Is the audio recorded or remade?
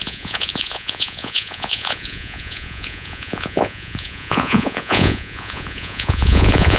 remade